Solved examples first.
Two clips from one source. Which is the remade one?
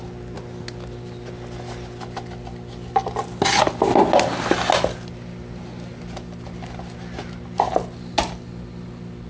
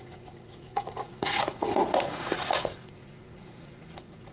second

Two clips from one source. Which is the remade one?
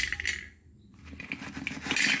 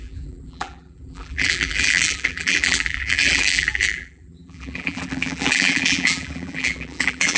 second